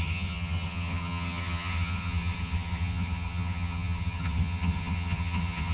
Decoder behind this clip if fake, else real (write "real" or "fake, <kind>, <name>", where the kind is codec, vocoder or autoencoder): fake, vocoder, HiFi-GAN